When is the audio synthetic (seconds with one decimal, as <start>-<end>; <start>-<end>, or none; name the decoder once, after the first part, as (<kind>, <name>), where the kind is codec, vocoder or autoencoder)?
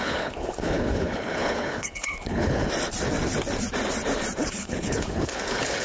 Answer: 0.0-2.6 (codec, HILCodec); 4.5-5.8